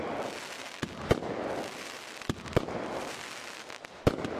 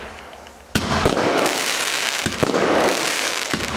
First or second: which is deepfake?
second